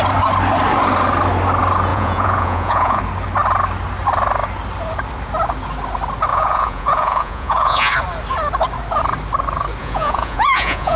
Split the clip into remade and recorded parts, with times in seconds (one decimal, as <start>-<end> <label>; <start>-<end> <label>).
0.0-1.9 recorded; 1.9-3.0 remade; 3.0-6.3 recorded; 6.3-7.9 remade; 7.9-9.8 recorded; 9.8-11.0 remade